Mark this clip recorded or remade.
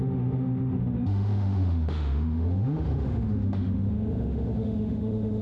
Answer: remade